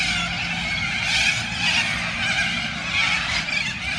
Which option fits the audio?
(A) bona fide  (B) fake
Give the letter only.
A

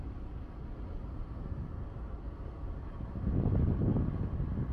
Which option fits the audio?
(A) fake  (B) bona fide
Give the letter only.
B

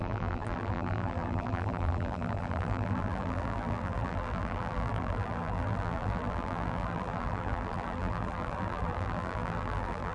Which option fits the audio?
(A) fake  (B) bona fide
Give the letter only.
A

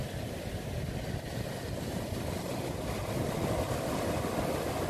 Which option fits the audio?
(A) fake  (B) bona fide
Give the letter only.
B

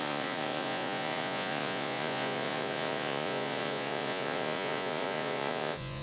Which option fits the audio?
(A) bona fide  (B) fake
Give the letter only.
B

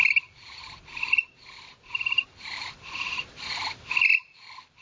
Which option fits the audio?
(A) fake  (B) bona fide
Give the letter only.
A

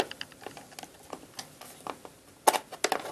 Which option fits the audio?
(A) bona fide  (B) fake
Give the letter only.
A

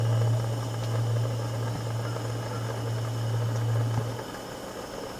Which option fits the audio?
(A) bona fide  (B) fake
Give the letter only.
A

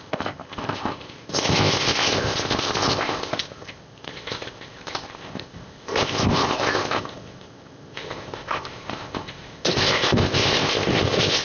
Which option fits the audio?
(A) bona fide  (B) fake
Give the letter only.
B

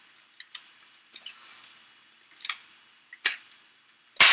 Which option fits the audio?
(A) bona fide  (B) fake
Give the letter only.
A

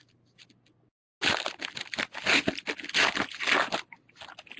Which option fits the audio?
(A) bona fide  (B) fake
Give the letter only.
A